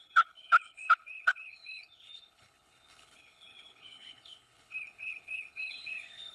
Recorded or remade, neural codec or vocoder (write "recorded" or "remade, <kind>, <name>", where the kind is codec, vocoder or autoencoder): remade, codec, HILCodec